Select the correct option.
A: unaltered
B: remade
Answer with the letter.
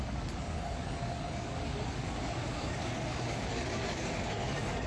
B